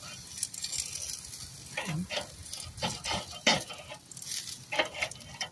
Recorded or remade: recorded